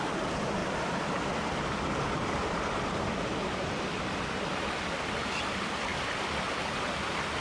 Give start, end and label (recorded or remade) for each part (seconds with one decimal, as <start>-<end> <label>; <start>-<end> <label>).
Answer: 0.0-7.4 recorded